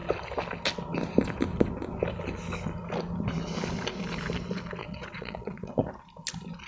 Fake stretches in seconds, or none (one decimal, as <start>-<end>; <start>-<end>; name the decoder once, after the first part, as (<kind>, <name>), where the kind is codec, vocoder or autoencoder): 4.8-5.7 (vocoder, WaveNeXt)